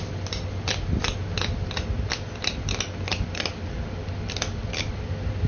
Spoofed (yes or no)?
no